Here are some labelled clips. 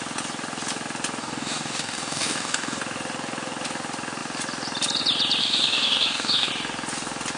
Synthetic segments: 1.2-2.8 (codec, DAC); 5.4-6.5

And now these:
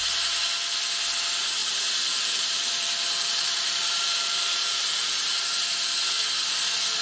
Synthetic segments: 1.6-5.5 (vocoder, BigVGAN v2)